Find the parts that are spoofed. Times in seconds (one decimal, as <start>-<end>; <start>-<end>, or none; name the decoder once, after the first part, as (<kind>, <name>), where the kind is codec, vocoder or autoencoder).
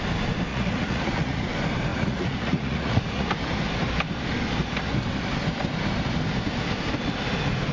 0.5-1.4 (vocoder, Vocos); 1.9-3.3